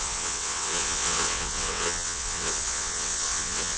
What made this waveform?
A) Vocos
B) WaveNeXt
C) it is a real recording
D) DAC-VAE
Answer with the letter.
B